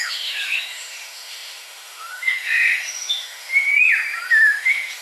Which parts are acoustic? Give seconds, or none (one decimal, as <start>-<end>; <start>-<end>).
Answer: 3.7-4.3

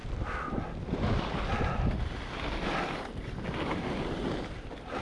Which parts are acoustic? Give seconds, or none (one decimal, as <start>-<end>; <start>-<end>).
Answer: 0.0-5.0

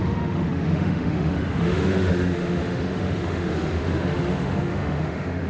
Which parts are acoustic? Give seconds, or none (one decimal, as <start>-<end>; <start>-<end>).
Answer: none

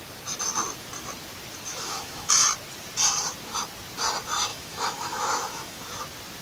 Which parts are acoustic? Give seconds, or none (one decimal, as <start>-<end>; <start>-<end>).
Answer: 0.0-1.7; 2.3-4.5; 5.8-6.4

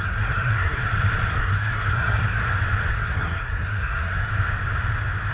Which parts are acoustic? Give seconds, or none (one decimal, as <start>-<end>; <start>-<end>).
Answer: 0.8-1.3; 2.4-2.9; 4.3-5.3

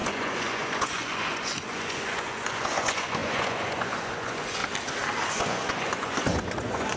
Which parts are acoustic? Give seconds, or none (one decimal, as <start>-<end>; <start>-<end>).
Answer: 4.6-5.3